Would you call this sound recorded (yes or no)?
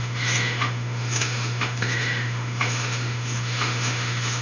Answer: no